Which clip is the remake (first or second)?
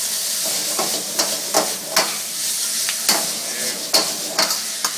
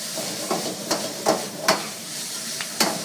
second